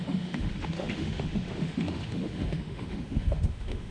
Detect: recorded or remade remade